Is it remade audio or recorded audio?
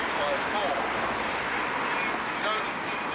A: recorded